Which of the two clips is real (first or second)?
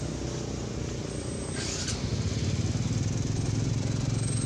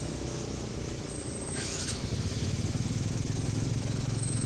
first